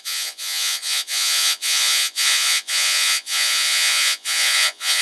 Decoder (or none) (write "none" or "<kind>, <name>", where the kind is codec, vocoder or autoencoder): vocoder, Vocos